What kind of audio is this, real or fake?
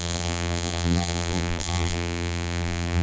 fake